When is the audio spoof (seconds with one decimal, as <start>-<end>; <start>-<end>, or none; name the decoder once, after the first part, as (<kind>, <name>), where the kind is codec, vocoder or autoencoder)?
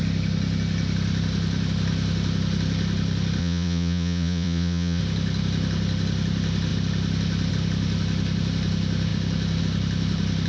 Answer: 3.4-5.0 (vocoder, Vocos)